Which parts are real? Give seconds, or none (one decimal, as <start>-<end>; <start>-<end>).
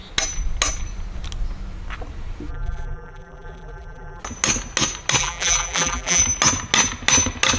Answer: 0.0-2.5; 4.2-5.2; 6.2-7.6